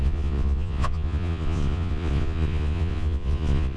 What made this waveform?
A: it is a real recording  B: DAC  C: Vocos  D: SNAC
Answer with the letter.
C